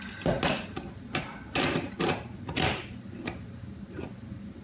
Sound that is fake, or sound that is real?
real